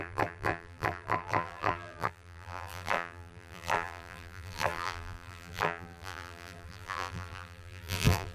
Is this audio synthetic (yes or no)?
yes